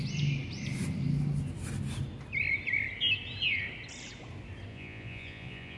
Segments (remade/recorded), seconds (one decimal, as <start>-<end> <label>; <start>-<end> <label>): 0.0-4.7 recorded; 4.7-5.8 remade